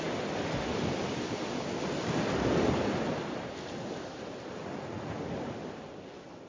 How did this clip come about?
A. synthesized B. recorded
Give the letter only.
B